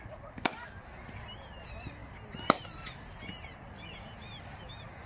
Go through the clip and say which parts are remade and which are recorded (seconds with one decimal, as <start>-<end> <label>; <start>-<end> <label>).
0.0-5.1 recorded

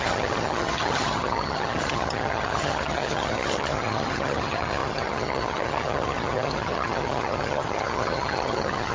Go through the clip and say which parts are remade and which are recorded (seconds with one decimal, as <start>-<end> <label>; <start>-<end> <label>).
0.0-8.9 remade

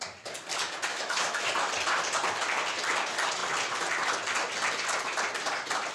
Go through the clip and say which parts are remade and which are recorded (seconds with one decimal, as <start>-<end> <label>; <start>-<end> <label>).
0.0-0.9 recorded; 0.9-1.5 remade; 1.5-5.9 recorded

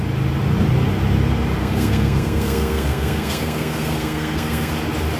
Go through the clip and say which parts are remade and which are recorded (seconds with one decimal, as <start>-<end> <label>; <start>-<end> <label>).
0.0-1.6 recorded; 1.6-4.7 remade; 4.7-5.2 recorded

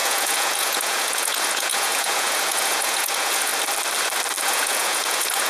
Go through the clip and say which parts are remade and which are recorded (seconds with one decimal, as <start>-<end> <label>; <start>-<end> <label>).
0.0-3.5 remade; 3.5-4.4 recorded; 4.4-5.5 remade

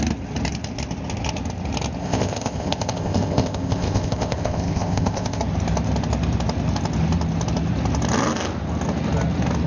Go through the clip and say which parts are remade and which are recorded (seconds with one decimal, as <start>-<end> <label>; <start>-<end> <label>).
0.0-2.0 recorded; 2.0-5.4 remade; 5.4-9.7 recorded